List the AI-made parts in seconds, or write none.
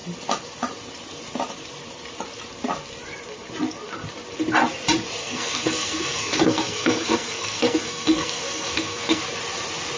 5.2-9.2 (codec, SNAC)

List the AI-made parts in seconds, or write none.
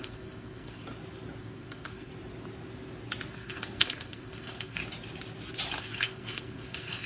0.0-0.8 (codec, SNAC); 1.4-2.1; 3.3-4.8; 5.8-7.1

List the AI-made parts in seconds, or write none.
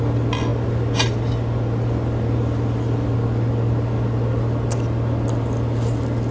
0.5-3.1 (vocoder, BigVGAN v2)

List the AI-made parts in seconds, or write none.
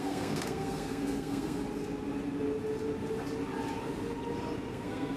0.0-1.6 (codec, SNAC); 4.7-5.2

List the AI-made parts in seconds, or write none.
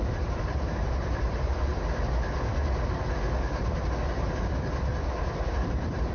0.0-1.7 (vocoder, BigVGAN v2); 4.9-6.1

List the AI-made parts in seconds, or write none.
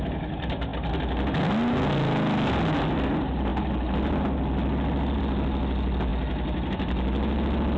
none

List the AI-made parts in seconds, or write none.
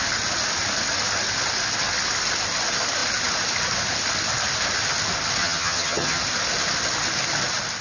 5.4-6.2 (vocoder, HiFi-GAN)